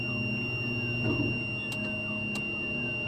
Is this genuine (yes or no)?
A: yes